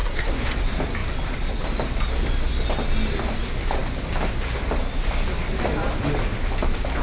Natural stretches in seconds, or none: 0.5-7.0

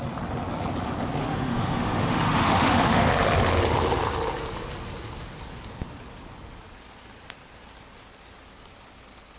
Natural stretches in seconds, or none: 0.0-1.2; 3.1-9.4

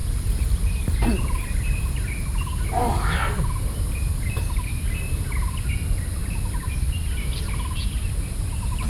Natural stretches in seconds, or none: 0.0-6.2; 6.9-8.9

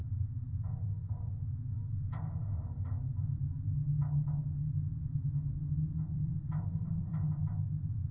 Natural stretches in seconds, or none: 0.0-8.1

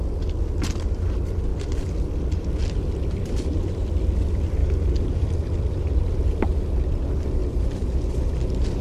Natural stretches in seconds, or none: 0.0-1.5; 4.0-4.6; 6.2-7.4; 8.0-8.8

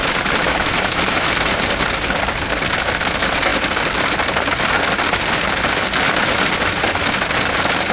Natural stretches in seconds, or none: 0.0-0.4; 1.3-7.9

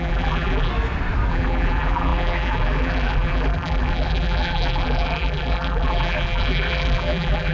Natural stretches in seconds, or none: 0.7-1.3

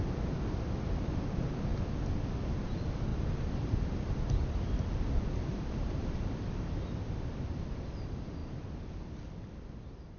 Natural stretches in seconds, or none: 0.0-3.1; 4.3-5.5; 7.4-10.2